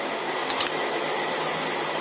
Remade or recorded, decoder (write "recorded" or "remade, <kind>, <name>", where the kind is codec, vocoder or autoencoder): recorded